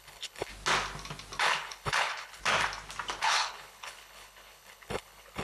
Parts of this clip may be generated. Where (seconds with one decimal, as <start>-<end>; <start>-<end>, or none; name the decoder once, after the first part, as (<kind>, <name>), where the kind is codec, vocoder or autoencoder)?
0.0-0.5 (codec, HILCodec); 1.4-2.4; 3.2-5.4